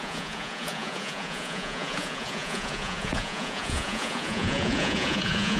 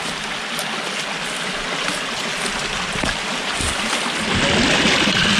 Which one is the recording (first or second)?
second